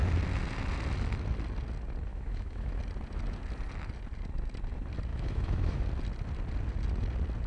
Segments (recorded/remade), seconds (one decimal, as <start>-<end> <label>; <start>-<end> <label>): 0.0-2.1 recorded; 2.1-2.8 remade; 2.8-5.1 recorded; 5.1-5.8 remade; 5.8-7.5 recorded